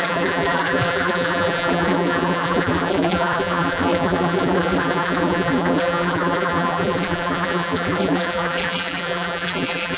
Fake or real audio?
fake